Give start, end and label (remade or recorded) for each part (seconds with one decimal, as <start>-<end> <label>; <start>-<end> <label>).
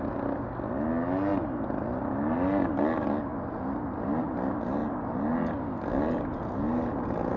0.0-7.4 recorded